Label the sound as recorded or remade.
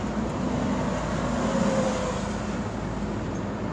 recorded